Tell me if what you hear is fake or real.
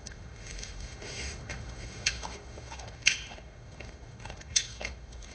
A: fake